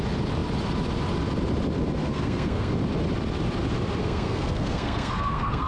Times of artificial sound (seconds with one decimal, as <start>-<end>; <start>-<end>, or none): 2.0-2.7; 4.0-5.7